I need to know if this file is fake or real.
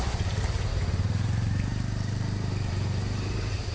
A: fake